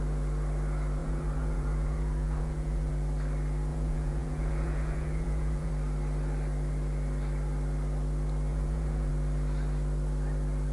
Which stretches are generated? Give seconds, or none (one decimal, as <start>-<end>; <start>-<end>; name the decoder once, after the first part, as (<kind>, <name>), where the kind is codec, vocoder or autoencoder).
1.0-2.9 (vocoder, Vocos); 3.7-5.7; 8.5-9.1

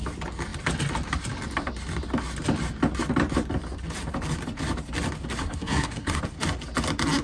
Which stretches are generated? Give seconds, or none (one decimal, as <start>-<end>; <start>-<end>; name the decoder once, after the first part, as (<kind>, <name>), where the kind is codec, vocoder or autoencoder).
5.4-6.2 (codec, SNAC)

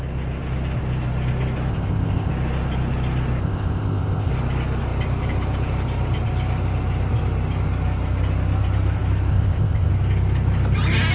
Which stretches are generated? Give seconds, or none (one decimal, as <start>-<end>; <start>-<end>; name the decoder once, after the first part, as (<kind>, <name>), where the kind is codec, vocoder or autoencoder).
1.7-2.3 (codec, ZipCodec); 3.4-4.3; 9.3-9.9

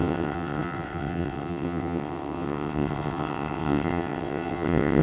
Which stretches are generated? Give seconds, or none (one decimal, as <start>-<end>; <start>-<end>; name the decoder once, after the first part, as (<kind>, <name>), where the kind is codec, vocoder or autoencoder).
0.0-5.0 (vocoder, WaveNeXt)

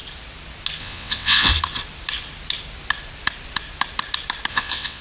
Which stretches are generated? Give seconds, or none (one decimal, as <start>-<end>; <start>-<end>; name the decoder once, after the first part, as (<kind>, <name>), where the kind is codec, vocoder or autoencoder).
0.8-1.5 (vocoder, WaveNeXt); 4.5-5.0

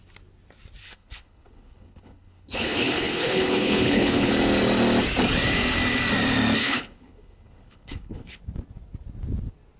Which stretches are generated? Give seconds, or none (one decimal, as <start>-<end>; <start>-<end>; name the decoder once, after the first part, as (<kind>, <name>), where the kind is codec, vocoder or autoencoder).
0.8-4.3 (codec, HILCodec); 6.6-8.4

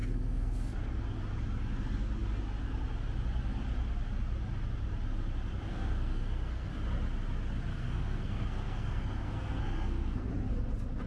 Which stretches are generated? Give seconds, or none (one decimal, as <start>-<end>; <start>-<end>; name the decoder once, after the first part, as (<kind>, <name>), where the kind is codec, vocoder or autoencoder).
0.0-0.9 (codec, SNAC); 5.7-6.7; 7.7-10.3